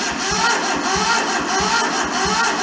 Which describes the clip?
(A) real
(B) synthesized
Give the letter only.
A